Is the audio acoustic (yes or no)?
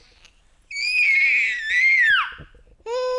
yes